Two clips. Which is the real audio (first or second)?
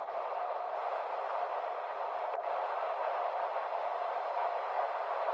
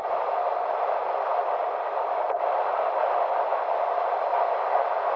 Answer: second